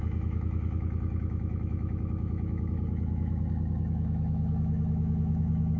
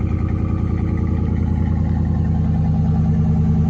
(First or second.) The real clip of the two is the second